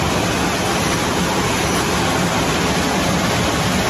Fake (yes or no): no